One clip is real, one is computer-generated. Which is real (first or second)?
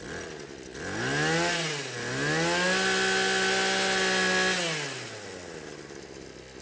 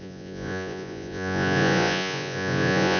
first